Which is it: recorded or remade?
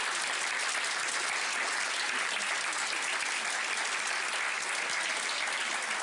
recorded